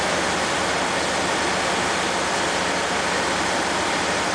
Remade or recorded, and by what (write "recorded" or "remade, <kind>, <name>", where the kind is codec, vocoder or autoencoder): recorded